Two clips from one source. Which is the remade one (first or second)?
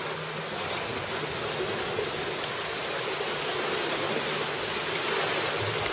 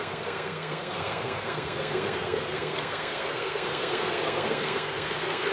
second